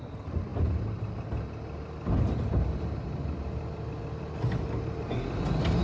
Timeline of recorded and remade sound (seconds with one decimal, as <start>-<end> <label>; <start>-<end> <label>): 0.0-5.8 recorded